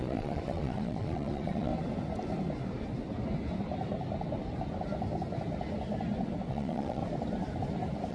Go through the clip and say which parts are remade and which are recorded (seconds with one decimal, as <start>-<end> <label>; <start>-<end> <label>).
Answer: 0.0-1.7 remade; 1.7-6.5 recorded; 6.5-7.0 remade; 7.0-8.1 recorded